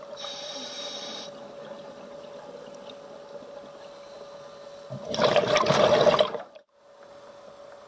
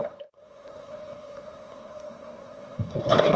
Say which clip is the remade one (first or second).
second